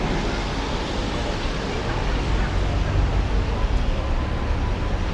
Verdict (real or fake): real